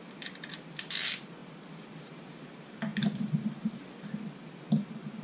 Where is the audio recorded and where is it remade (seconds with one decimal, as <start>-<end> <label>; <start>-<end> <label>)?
0.0-1.4 recorded; 1.4-2.0 remade; 2.0-5.2 recorded